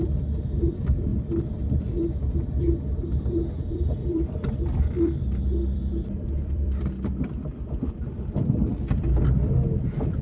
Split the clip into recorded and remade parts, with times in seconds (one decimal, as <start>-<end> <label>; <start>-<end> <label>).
0.0-1.1 remade; 1.1-3.7 recorded; 3.7-8.4 remade; 8.4-9.2 recorded; 9.2-10.2 remade